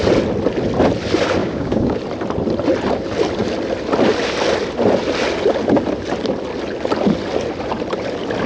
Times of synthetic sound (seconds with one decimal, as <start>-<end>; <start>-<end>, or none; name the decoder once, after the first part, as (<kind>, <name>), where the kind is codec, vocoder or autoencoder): 1.4-2.0 (codec, DAC)

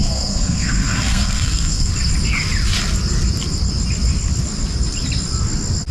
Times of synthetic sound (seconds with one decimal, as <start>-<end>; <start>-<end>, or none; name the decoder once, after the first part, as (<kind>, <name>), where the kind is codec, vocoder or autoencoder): 0.0-1.9 (codec, SNAC)

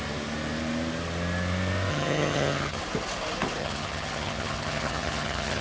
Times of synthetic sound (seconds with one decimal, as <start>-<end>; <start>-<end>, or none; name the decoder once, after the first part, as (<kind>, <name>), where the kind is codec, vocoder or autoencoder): 1.9-2.8 (vocoder, HiFi-GAN); 3.6-5.6